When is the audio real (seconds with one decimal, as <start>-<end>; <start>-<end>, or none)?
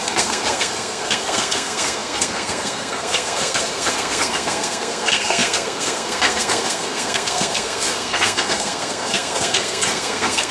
none